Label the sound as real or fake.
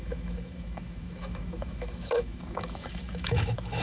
fake